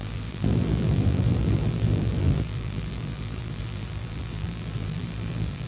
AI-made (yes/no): yes